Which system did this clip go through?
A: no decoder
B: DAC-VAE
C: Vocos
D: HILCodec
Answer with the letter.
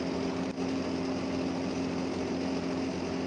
A